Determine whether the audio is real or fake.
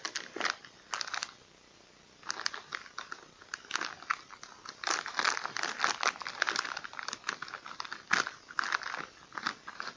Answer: real